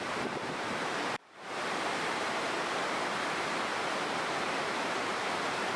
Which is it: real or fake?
fake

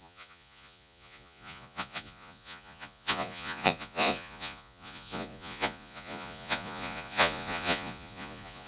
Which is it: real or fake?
fake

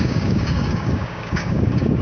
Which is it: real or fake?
fake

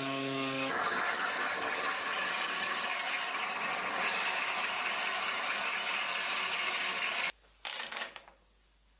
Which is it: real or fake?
fake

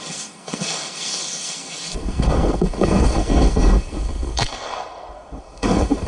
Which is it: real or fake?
fake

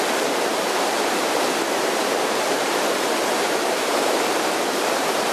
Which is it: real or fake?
fake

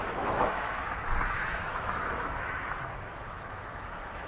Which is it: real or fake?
fake